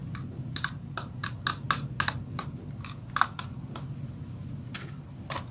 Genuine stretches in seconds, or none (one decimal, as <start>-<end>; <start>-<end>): 0.0-5.5